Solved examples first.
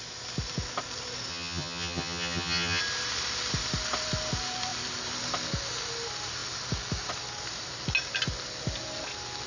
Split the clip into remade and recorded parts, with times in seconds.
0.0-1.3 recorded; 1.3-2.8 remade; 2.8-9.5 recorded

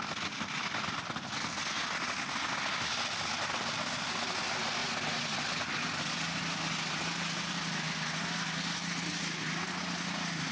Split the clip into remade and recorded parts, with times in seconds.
0.0-10.5 recorded

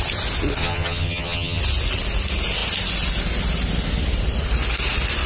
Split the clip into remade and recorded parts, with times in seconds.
0.0-0.6 recorded; 0.6-1.6 remade; 1.6-5.3 recorded